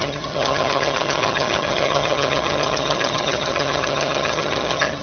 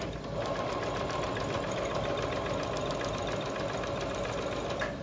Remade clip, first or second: first